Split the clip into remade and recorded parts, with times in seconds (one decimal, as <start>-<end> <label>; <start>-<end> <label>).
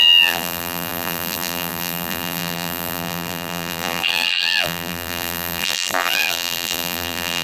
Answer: 0.0-7.4 remade